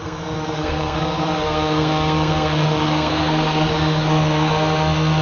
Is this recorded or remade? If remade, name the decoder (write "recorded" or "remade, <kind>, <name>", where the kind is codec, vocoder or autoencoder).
remade, codec, SNAC